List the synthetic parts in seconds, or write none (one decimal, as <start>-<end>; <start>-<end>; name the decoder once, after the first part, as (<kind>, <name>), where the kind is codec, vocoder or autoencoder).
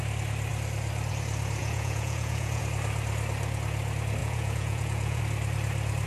1.6-2.6 (vocoder, Vocos); 4.2-5.2